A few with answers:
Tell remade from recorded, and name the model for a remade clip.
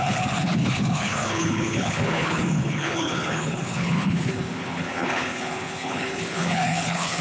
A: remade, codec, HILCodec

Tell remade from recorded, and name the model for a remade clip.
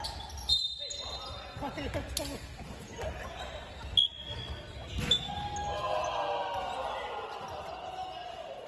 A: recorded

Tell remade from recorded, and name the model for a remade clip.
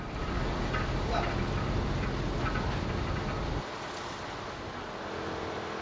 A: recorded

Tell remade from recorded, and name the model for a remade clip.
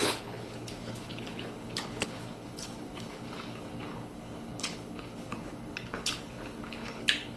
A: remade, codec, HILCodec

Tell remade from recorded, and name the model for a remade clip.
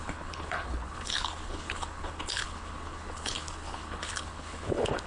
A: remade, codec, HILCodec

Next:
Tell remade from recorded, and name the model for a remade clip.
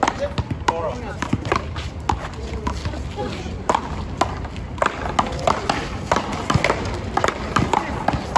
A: recorded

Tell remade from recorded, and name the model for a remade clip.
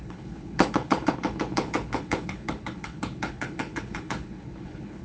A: remade, codec, HILCodec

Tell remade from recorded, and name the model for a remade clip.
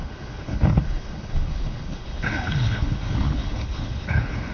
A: remade, codec, HILCodec